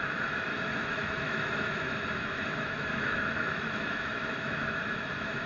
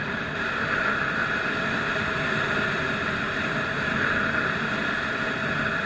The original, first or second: second